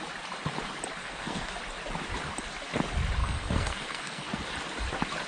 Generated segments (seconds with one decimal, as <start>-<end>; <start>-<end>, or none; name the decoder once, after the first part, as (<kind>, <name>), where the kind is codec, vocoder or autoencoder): 1.0-1.6 (codec, SNAC); 3.2-4.4